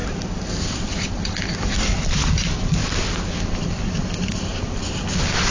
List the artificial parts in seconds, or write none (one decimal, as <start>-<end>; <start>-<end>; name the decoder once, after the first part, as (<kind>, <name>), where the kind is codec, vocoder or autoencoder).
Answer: 0.0-2.8 (vocoder, BigVGAN v2); 3.4-5.5